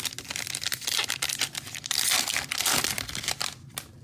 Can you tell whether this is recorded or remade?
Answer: recorded